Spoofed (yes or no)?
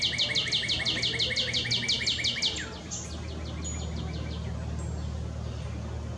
no